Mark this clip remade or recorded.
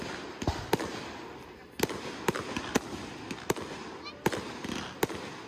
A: recorded